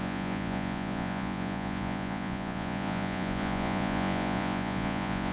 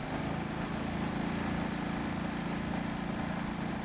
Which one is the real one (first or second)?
second